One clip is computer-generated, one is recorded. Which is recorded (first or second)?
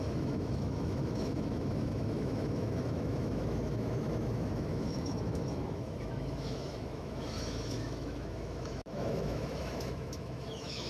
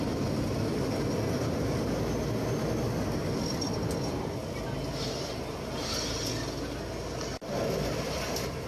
second